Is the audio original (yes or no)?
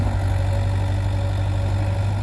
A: yes